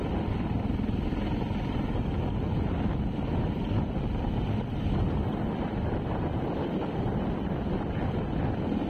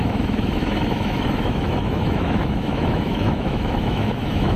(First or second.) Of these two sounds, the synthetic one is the second